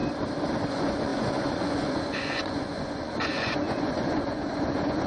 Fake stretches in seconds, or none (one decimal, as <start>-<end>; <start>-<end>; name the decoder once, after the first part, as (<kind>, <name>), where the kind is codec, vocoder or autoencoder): 0.7-5.1 (vocoder, Vocos)